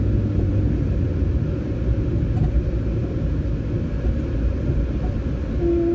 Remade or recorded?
recorded